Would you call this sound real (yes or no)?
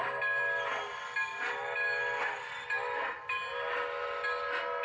yes